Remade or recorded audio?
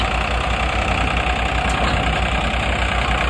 recorded